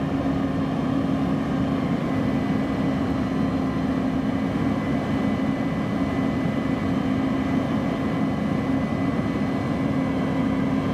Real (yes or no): yes